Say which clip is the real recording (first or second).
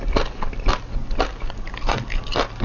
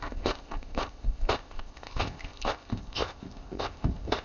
first